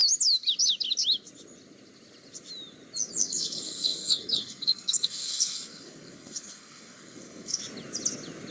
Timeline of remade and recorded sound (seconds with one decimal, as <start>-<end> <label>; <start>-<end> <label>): 0.0-3.2 recorded; 3.2-7.6 remade; 7.6-8.5 recorded